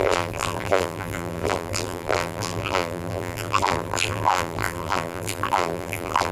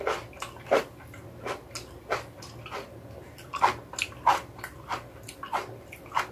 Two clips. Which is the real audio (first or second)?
second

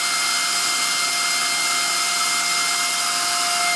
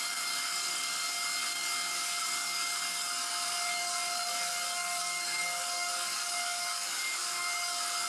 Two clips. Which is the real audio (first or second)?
first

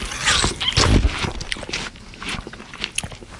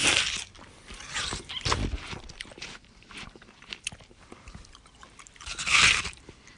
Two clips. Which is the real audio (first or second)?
first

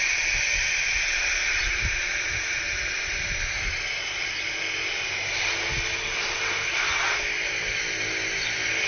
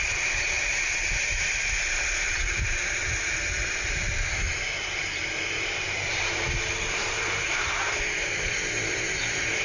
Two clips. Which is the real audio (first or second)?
first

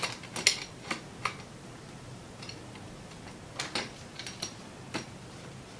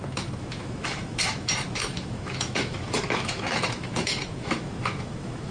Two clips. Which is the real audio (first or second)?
first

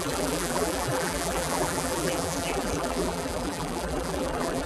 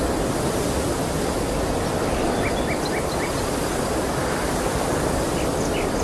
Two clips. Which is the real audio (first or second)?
second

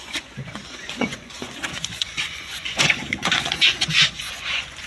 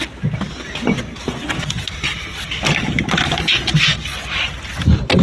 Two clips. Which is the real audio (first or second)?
second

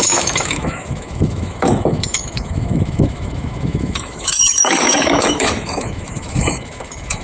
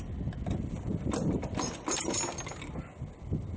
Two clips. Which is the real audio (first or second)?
second